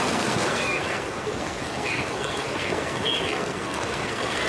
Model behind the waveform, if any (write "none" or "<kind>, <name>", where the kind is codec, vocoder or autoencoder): codec, SNAC